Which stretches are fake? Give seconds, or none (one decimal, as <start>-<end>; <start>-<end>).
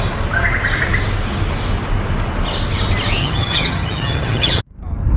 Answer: 3.2-4.6